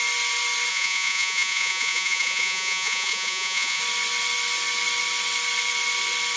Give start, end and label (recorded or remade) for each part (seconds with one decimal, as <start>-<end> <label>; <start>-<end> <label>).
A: 0.0-0.7 recorded; 0.7-3.8 remade; 3.8-6.4 recorded